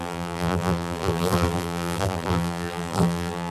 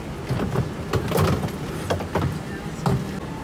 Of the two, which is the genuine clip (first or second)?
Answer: second